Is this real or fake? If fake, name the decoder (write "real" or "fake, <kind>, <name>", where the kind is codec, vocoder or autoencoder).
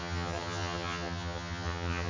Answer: fake, vocoder, HiFi-GAN